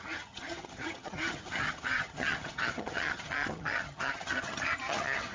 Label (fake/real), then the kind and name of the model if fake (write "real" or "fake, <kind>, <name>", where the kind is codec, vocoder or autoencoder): fake, vocoder, HiFi-GAN